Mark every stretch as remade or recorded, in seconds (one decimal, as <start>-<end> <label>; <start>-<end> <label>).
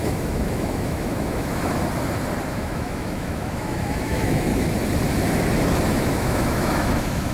0.0-1.8 remade; 1.8-2.5 recorded; 2.5-4.5 remade; 4.5-5.9 recorded; 5.9-7.3 remade